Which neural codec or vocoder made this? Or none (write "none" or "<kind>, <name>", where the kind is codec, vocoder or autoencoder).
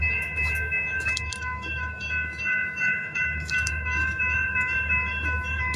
autoencoder, DAC-VAE